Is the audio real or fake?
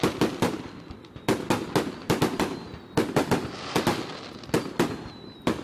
real